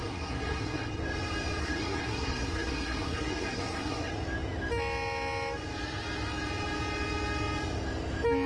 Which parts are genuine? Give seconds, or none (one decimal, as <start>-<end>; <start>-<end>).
1.0-1.6; 4.1-8.5